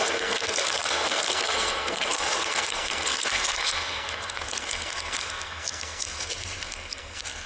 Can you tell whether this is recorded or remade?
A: remade